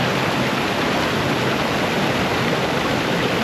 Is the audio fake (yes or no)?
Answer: no